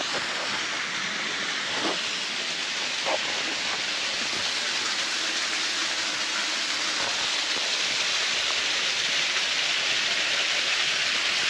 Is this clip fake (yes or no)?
no